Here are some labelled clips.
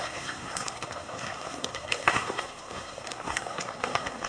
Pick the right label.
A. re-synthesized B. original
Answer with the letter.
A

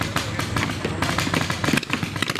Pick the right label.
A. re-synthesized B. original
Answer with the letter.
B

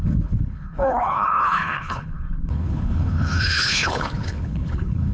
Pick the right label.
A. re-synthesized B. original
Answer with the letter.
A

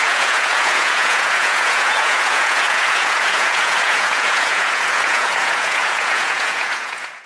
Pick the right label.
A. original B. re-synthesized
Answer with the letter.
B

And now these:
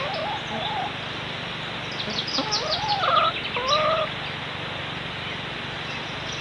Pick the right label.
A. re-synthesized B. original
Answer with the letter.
B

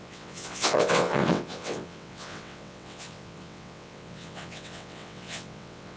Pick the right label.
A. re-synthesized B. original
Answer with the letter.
A